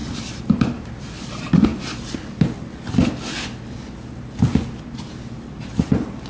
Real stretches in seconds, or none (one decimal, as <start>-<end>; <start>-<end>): 0.0-6.3